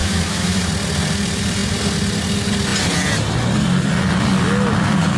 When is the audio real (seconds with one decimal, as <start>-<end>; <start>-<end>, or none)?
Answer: 0.6-5.2